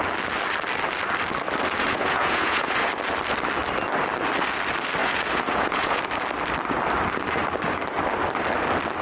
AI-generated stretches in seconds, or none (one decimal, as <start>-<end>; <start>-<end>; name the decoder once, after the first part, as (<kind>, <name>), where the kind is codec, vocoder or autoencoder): 1.8-2.9 (vocoder, Vocos); 5.0-6.0